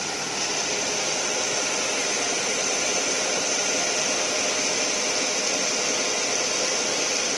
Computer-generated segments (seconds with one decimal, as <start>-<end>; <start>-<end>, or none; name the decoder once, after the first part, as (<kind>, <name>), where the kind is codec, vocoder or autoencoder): 2.0-4.1 (vocoder, BigVGAN v2)